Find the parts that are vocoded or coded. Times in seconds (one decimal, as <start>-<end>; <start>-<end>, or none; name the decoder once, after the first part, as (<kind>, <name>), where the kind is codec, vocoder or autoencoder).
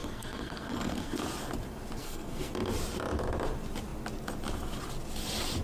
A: 0.0-1.2 (codec, SNAC); 2.0-2.5